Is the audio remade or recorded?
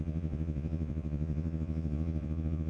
remade